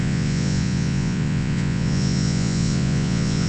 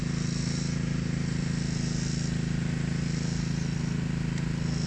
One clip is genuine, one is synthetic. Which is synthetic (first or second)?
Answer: first